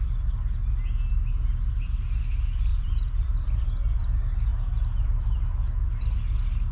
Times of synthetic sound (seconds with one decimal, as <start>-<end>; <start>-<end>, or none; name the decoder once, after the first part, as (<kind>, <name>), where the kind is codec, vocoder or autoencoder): 2.7-4.0 (vocoder, BigVGAN v2)